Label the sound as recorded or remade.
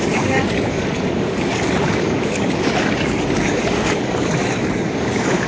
remade